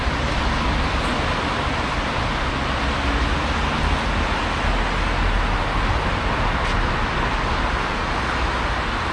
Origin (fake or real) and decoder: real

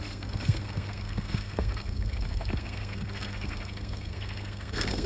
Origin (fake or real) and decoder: fake, codec, SNAC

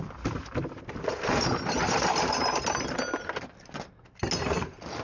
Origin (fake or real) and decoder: real